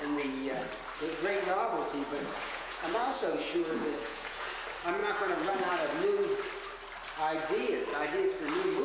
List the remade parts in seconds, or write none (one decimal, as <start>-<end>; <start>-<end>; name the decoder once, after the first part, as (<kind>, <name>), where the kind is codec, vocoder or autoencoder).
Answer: 2.1-4.5 (vocoder, Vocos); 5.0-5.7